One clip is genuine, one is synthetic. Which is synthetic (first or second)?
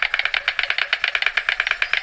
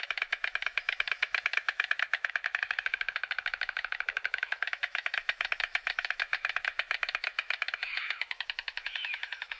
second